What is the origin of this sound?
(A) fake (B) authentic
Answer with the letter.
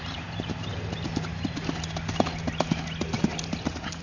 B